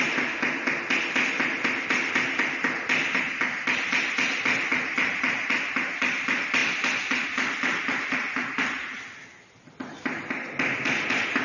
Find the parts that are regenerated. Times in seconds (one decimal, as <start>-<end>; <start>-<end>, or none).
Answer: none